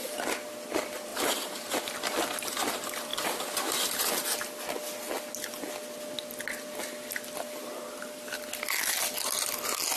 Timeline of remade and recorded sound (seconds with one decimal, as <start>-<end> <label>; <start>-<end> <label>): 0.0-1.1 recorded; 1.1-1.8 remade; 1.8-3.1 recorded; 3.1-3.8 remade; 3.8-10.0 recorded